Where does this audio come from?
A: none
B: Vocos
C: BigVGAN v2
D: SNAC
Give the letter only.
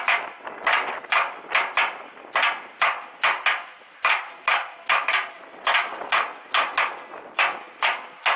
A